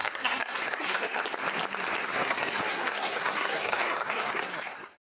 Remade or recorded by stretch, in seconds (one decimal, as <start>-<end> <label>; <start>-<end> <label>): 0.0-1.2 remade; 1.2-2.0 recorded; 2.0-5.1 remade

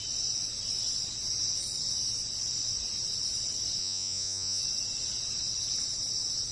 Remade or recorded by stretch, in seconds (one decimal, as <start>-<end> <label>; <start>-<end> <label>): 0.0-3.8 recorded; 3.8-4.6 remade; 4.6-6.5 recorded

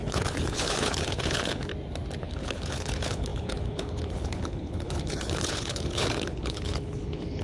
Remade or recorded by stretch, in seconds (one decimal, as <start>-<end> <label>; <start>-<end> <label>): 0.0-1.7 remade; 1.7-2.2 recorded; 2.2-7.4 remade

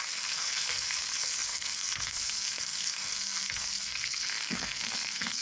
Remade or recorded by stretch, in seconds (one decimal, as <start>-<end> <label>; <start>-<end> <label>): 0.0-5.4 remade

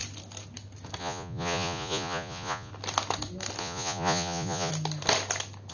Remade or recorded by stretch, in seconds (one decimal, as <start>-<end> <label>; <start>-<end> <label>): 0.0-1.0 recorded; 1.0-2.7 remade; 2.7-3.6 recorded; 3.6-4.7 remade; 4.7-5.7 recorded